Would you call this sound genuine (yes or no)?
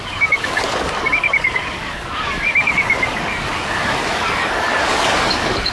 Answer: no